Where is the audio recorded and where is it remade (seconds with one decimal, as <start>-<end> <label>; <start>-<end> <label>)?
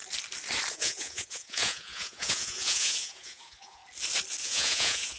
0.0-0.7 recorded; 0.7-3.8 remade; 3.8-4.4 recorded; 4.4-5.2 remade